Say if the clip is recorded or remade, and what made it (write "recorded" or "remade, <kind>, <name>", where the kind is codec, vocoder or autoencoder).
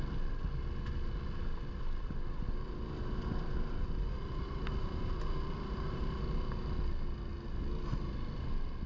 recorded